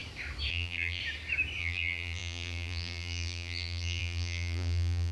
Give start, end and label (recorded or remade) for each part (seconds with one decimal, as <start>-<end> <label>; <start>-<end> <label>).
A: 0.0-0.5 recorded; 0.5-1.0 remade; 1.0-1.6 recorded; 1.6-5.1 remade